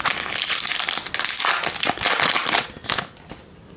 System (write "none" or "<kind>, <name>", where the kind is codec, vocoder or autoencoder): none